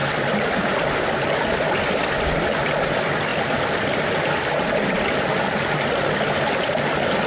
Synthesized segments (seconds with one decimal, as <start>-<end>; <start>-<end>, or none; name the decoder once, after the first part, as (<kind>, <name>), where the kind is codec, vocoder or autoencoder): none